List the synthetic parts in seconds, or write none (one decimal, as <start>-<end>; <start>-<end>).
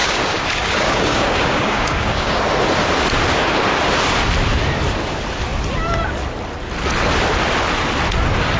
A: 0.0-2.4